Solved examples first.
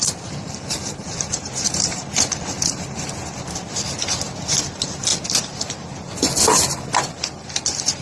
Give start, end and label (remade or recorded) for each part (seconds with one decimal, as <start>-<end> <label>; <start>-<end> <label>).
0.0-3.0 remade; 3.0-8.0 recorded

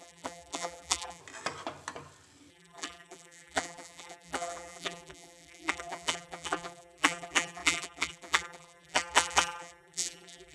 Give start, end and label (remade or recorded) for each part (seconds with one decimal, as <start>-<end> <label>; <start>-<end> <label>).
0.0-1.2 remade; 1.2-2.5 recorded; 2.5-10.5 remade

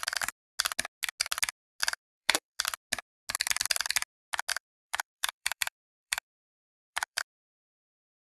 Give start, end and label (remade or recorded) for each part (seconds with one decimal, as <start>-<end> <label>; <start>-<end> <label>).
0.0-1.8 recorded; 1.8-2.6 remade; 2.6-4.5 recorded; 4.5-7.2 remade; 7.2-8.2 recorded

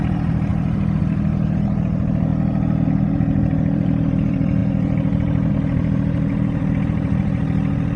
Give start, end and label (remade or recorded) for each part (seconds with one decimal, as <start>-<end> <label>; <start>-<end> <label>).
0.0-2.3 remade; 2.3-2.9 recorded; 2.9-8.0 remade

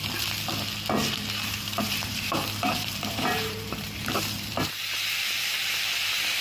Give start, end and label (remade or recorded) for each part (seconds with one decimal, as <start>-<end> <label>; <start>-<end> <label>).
0.0-1.0 recorded; 1.0-4.8 remade; 4.8-6.4 recorded

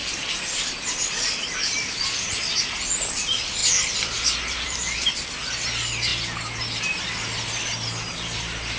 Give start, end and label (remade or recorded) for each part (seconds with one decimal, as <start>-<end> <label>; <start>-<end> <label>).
0.0-2.4 remade; 2.4-3.6 recorded; 3.6-5.1 remade; 5.1-8.8 recorded

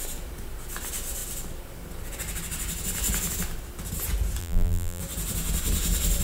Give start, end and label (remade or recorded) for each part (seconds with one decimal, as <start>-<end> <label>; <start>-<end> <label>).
0.0-4.4 recorded; 4.4-5.0 remade; 5.0-6.2 recorded

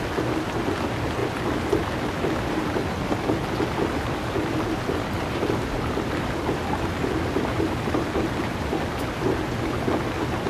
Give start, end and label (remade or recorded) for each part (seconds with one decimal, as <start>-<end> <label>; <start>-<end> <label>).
0.0-10.5 recorded